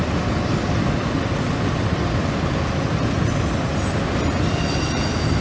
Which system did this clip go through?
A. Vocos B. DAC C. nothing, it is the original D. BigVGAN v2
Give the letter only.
C